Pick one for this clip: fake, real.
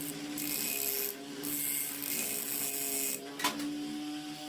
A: real